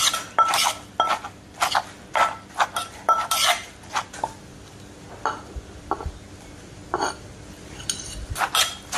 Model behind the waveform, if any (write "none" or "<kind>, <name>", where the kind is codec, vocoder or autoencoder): none